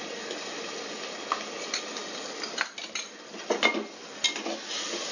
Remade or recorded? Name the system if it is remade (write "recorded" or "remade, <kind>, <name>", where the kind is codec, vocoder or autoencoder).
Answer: recorded